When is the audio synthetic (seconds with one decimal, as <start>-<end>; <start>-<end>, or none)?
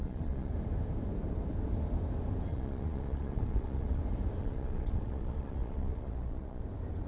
0.0-0.5; 2.5-4.0; 4.4-6.6